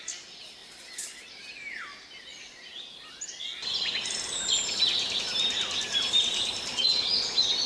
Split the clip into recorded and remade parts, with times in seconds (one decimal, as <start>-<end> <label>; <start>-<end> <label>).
0.0-6.7 recorded; 6.7-7.2 remade; 7.2-7.7 recorded